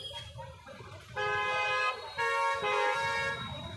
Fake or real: real